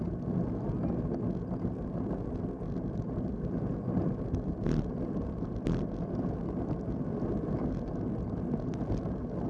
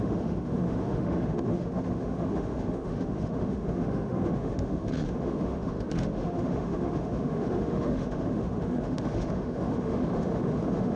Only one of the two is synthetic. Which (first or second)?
second